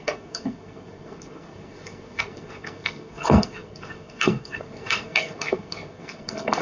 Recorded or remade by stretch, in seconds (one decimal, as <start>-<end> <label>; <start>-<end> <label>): 0.0-6.6 remade